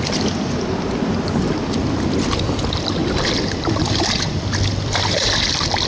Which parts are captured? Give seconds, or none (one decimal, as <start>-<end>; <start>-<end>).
0.0-5.9